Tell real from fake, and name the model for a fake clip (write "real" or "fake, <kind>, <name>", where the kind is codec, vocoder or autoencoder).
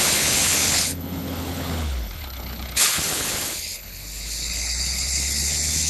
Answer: fake, codec, HILCodec